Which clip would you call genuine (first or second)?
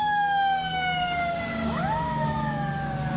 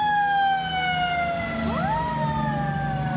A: second